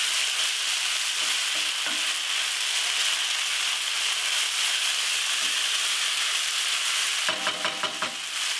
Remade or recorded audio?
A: recorded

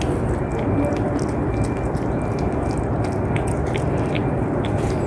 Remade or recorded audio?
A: recorded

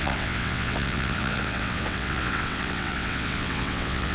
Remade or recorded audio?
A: remade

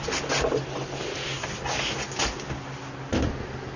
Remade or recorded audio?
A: recorded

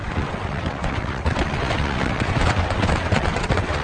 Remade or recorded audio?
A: remade